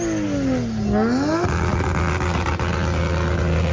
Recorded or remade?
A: recorded